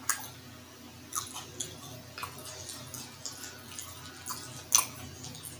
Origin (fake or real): real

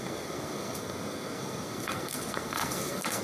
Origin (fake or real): fake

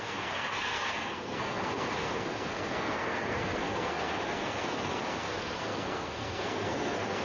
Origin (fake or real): fake